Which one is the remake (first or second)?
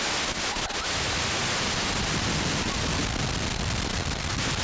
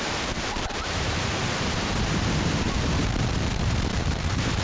second